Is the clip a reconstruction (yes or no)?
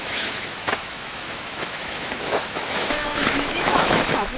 yes